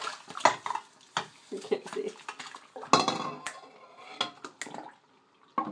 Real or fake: real